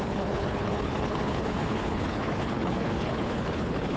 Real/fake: fake